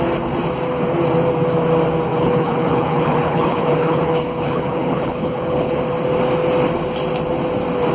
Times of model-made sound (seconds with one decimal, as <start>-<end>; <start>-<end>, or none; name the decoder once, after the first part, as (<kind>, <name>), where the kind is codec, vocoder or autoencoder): 2.1-5.8 (codec, HILCodec)